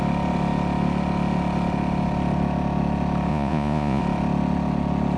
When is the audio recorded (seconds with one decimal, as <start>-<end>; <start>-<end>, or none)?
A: 0.0-3.3; 4.0-5.2